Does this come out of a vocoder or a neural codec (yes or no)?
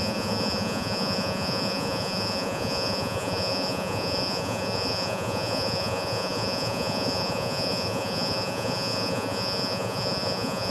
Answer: yes